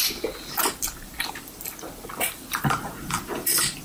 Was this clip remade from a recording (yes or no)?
no